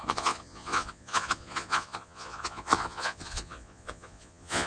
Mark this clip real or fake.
fake